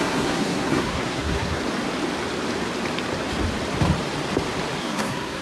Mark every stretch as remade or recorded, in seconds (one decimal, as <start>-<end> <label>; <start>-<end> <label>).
0.0-1.6 remade; 1.6-4.8 recorded; 4.8-5.4 remade